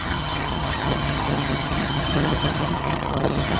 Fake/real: fake